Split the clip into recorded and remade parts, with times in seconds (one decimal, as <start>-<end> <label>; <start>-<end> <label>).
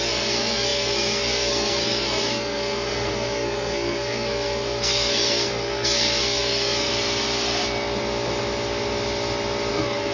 0.0-6.9 remade; 6.9-9.7 recorded; 9.7-10.1 remade